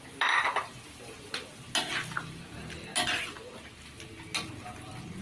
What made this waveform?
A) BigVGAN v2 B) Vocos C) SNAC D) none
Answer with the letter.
D